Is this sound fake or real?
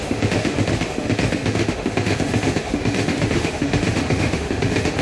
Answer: fake